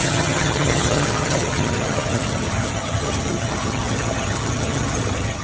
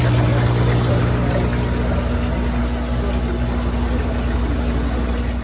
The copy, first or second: first